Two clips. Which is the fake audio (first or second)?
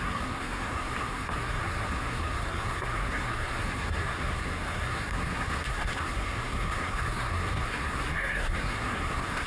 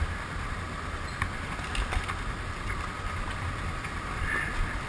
first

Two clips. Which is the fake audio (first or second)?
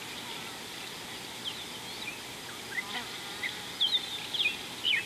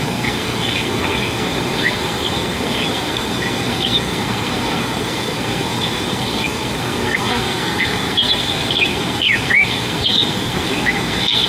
second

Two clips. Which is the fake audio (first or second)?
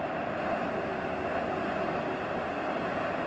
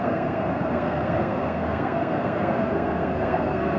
second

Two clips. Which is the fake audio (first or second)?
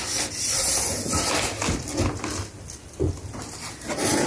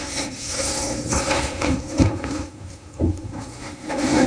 second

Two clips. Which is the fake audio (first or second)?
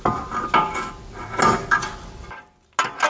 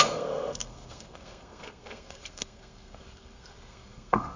second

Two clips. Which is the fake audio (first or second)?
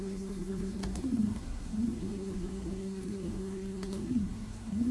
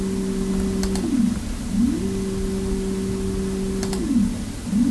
first